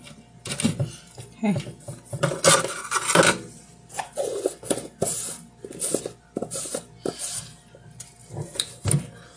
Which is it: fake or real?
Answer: real